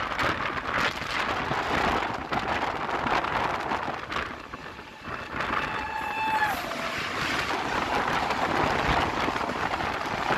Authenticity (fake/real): real